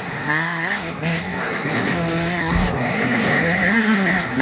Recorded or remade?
remade